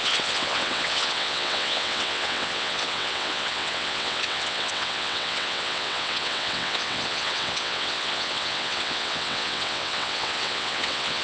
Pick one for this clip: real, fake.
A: fake